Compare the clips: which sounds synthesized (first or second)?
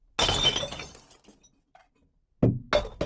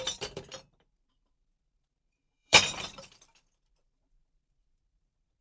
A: second